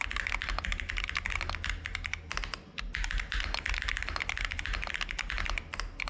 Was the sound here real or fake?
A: real